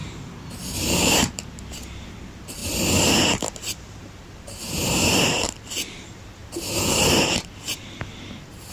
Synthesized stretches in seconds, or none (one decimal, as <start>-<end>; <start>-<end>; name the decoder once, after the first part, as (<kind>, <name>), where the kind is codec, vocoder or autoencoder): 0.0-2.6 (vocoder, BigVGAN v2); 3.1-8.7